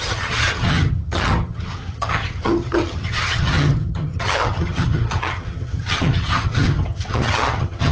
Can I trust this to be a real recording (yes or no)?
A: no